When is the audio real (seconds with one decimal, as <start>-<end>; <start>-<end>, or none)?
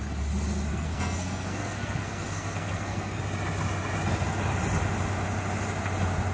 0.0-0.7; 3.2-6.3